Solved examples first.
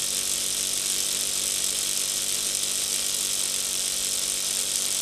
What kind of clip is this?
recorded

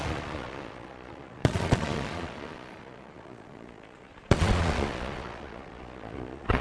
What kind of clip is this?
remade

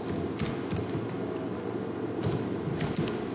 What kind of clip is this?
recorded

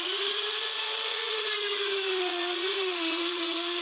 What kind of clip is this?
remade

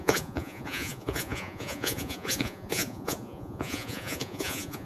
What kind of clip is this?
remade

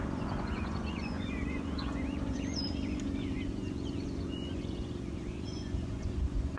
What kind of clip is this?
remade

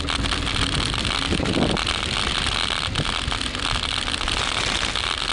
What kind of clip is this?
recorded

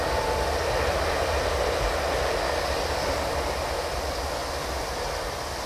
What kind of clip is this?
recorded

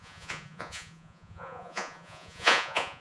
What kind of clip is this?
remade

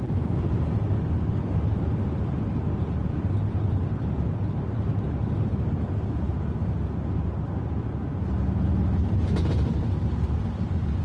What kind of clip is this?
recorded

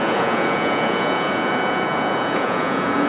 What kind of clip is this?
remade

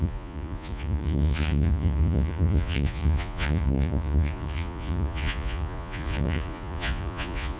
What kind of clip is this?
remade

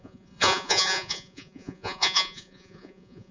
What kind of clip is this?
remade